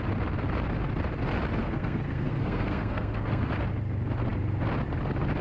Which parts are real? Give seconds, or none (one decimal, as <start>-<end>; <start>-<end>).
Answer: 0.0-1.6; 3.5-5.4